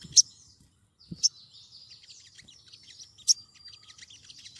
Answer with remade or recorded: recorded